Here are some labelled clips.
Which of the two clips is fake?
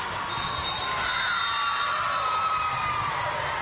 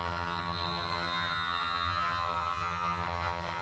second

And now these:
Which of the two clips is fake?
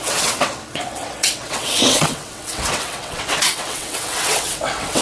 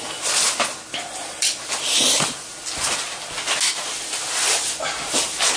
first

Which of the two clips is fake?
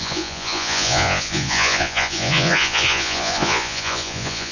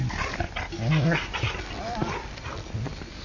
first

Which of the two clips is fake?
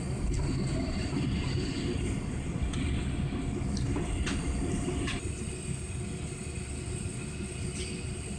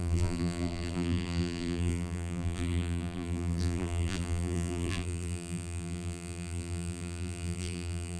second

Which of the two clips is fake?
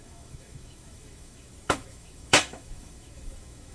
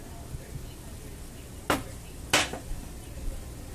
first